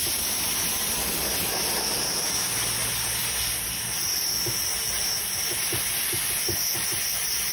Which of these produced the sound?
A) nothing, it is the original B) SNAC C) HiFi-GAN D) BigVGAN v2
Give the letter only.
A